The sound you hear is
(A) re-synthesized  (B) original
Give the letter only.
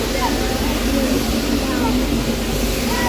B